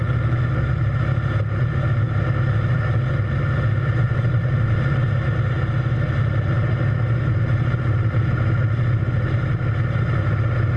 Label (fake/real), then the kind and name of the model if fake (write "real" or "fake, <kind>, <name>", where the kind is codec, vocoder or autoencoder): real